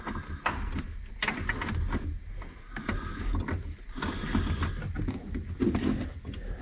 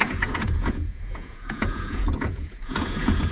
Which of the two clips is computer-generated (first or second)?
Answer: second